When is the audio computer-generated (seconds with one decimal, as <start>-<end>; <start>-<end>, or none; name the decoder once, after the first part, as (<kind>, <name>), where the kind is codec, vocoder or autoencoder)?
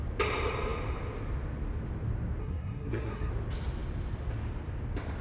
2.4-3.3 (codec, SNAC)